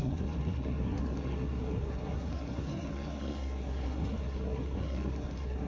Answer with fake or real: fake